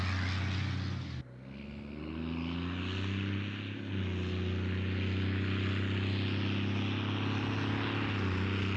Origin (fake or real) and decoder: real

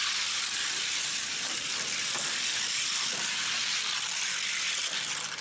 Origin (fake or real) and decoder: real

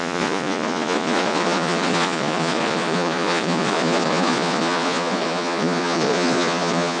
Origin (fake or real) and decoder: fake, vocoder, Vocos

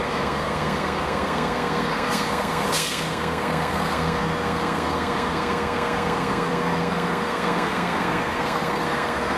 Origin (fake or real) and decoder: fake, codec, SNAC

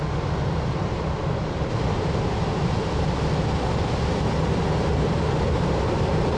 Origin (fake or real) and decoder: real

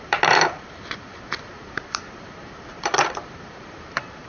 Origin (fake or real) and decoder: fake, vocoder, BigVGAN v2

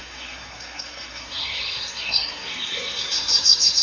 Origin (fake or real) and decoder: fake, codec, SNAC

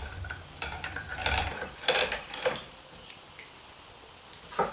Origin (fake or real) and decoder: real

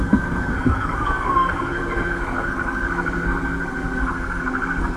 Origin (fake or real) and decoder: fake, codec, SNAC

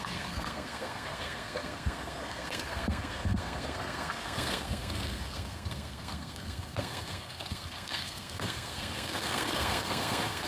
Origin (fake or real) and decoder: fake, codec, SNAC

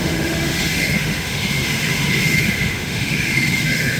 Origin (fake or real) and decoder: fake, autoencoder, DAC-VAE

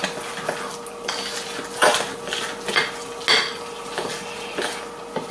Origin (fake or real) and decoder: real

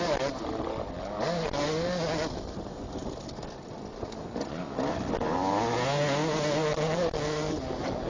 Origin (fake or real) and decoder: real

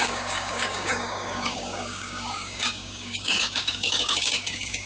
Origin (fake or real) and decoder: fake, codec, DAC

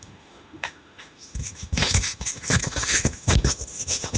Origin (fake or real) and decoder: fake, autoencoder, DAC-VAE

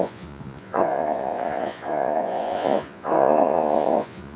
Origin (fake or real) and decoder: fake, vocoder, Vocos